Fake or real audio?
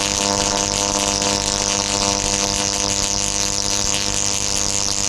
real